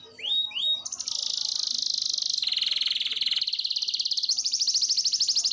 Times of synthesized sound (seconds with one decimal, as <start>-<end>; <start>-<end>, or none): none